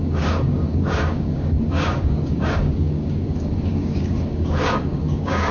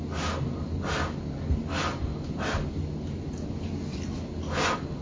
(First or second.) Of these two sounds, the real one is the second